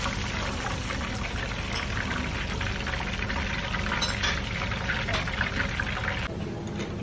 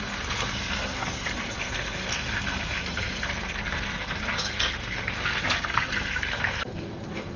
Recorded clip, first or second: first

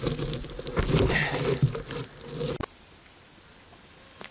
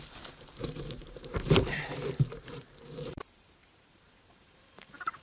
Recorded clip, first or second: first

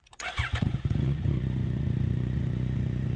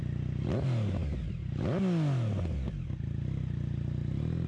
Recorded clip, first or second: second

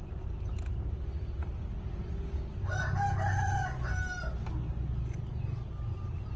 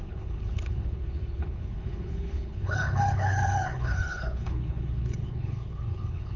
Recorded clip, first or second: first